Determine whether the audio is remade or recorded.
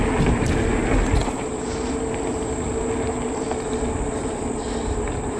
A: recorded